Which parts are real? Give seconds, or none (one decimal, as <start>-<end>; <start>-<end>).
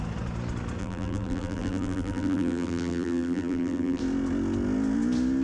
0.0-0.8; 4.0-5.4